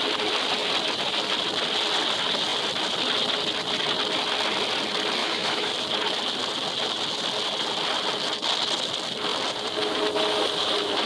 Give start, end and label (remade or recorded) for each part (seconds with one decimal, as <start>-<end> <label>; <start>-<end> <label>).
0.0-5.2 recorded; 5.2-5.7 remade; 5.7-11.1 recorded

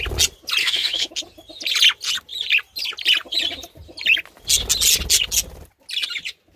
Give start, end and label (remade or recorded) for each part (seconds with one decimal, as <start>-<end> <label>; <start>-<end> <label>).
0.0-0.6 recorded; 0.6-1.1 remade; 1.1-6.6 recorded

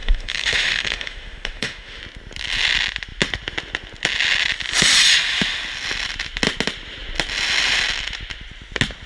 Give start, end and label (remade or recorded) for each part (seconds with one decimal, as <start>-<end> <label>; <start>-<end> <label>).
0.0-2.0 remade; 2.0-9.1 recorded

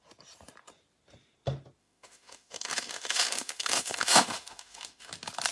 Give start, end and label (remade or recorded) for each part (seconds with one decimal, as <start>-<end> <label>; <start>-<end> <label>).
0.0-1.8 recorded; 1.8-5.1 remade; 5.1-5.5 recorded

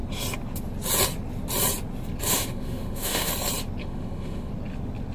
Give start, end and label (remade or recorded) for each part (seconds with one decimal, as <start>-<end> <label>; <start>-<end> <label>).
0.0-2.3 recorded; 2.3-3.3 remade; 3.3-3.8 recorded; 3.8-4.5 remade; 4.5-5.1 recorded

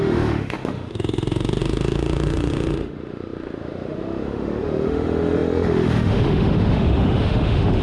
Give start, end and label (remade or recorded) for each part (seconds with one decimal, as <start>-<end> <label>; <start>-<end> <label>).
0.0-7.8 remade

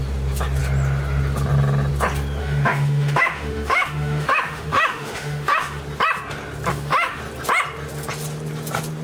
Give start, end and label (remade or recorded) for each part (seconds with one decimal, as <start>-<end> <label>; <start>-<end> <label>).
0.0-2.4 recorded; 2.4-5.8 remade; 5.8-6.7 recorded; 6.7-7.2 remade; 7.2-9.0 recorded